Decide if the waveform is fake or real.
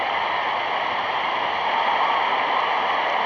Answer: real